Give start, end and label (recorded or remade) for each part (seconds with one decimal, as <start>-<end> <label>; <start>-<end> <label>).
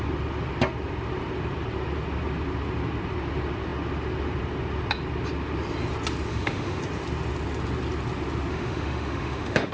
0.0-6.3 recorded; 6.3-6.8 remade; 6.8-8.5 recorded; 8.5-9.7 remade